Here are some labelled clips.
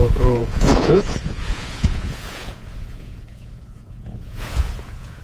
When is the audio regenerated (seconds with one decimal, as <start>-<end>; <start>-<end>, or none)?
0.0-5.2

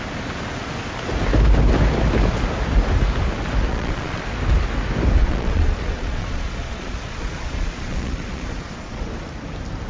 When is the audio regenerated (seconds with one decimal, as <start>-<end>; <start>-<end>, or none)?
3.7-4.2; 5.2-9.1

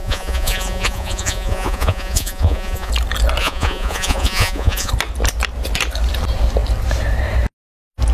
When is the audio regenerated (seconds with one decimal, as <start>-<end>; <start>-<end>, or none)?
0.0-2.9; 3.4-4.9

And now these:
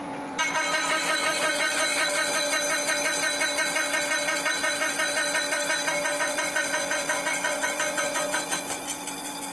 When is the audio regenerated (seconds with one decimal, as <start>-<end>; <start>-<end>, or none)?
0.0-0.4; 1.2-1.9; 6.2-9.5

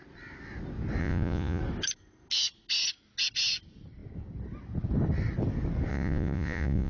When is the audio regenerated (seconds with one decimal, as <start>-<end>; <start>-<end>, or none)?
1.0-1.6; 5.9-6.9